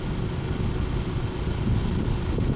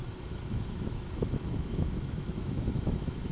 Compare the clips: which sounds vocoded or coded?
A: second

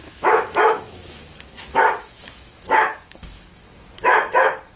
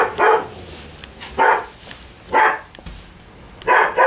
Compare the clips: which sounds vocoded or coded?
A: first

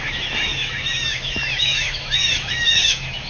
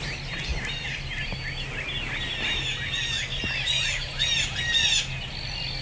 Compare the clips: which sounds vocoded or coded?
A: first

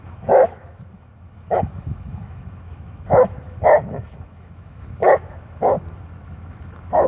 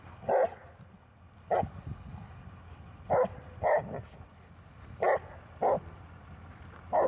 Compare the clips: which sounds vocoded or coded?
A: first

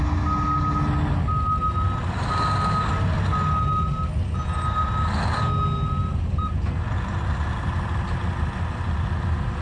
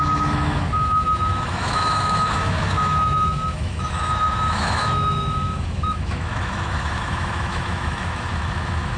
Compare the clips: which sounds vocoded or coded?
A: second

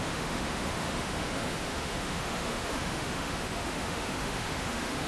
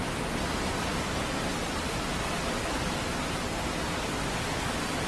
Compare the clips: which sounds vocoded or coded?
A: first